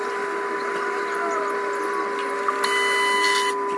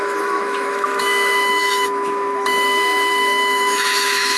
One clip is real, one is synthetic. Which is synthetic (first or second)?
second